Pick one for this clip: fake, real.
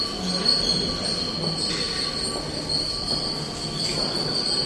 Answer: real